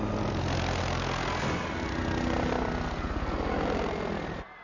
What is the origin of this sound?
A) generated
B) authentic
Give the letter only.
B